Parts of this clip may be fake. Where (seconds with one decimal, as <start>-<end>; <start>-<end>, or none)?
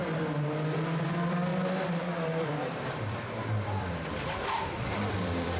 1.0-5.6